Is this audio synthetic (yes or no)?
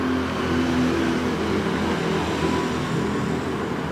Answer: no